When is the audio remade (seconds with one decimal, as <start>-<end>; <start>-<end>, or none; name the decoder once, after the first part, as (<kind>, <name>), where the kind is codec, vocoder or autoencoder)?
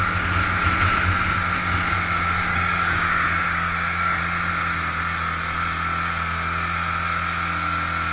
2.5-4.2 (codec, DAC)